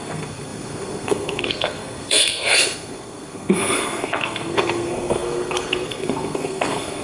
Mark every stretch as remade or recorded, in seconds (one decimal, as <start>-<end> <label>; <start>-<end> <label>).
0.0-7.0 remade